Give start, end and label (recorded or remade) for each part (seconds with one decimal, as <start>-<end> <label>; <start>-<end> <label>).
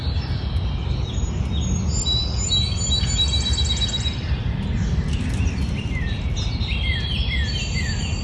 0.0-8.2 recorded